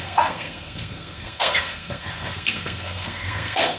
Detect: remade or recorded remade